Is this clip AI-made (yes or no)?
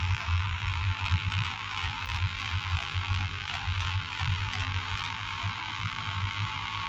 yes